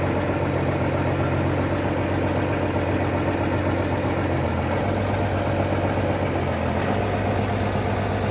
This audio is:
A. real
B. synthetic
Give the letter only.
A